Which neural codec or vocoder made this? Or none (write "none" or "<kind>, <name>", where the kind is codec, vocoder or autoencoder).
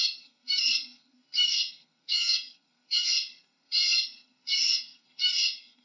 codec, SNAC